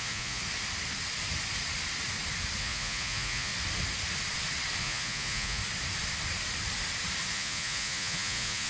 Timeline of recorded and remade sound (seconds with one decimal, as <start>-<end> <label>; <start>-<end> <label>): 0.0-0.4 remade; 0.4-2.6 recorded; 2.6-3.5 remade; 3.5-4.8 recorded; 4.8-5.6 remade; 5.6-7.3 recorded; 7.3-8.7 remade